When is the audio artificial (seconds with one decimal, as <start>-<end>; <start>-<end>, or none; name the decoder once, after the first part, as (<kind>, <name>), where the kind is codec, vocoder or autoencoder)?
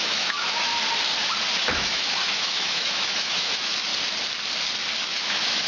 0.0-0.7 (autoencoder, DAC-VAE); 1.6-3.9; 5.0-5.7